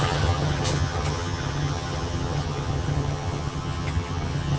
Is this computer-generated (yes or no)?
yes